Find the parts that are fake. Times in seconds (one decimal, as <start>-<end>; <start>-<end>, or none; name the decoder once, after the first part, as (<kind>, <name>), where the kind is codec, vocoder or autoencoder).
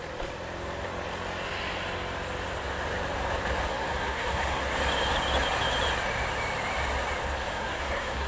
3.7-4.6 (codec, SNAC); 7.5-8.3